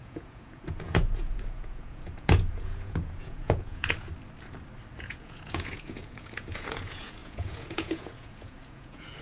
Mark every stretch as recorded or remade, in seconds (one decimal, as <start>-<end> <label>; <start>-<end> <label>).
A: 0.0-4.1 remade; 4.1-5.0 recorded; 5.0-9.2 remade